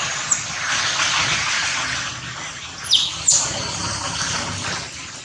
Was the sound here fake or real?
real